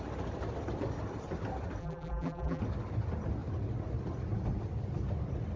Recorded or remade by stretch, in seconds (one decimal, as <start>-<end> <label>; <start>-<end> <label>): 0.0-1.8 recorded; 1.8-2.6 remade; 2.6-5.6 recorded

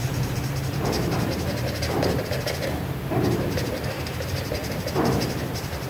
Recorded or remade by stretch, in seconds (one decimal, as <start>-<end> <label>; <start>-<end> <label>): 0.0-5.9 remade

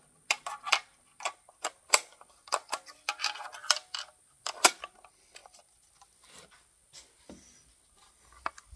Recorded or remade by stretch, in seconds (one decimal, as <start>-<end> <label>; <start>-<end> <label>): 0.0-3.6 recorded; 3.6-4.7 remade; 4.7-8.8 recorded